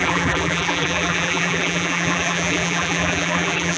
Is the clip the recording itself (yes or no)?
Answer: no